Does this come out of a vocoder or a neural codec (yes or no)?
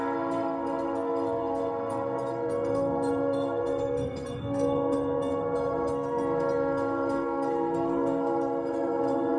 yes